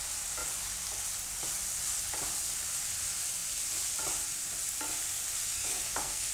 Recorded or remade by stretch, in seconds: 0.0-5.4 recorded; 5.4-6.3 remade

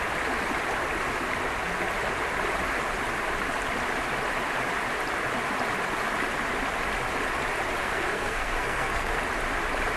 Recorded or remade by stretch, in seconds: 0.0-7.8 recorded; 7.8-9.2 remade; 9.2-10.0 recorded

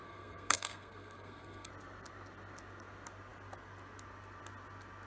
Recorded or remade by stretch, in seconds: 0.0-1.7 remade; 1.7-5.1 recorded

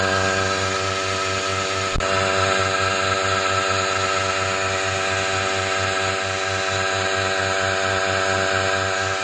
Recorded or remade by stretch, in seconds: 0.0-9.2 recorded